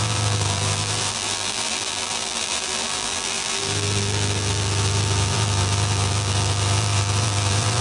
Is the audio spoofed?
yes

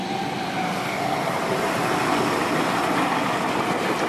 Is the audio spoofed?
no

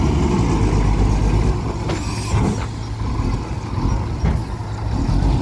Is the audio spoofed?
no